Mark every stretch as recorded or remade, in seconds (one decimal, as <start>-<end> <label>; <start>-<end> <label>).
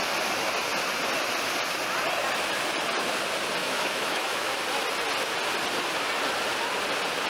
0.0-3.6 recorded; 3.6-4.5 remade; 4.5-7.3 recorded